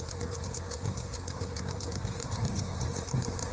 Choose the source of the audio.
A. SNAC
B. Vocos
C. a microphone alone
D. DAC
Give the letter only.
A